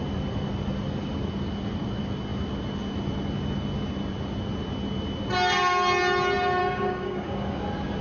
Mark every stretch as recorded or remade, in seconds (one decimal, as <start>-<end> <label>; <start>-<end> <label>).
0.0-6.6 recorded; 6.6-7.6 remade; 7.6-8.0 recorded